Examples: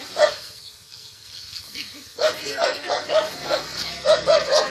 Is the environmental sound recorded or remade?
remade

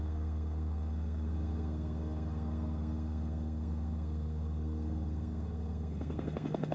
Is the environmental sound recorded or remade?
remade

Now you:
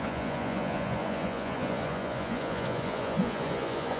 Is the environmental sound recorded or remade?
remade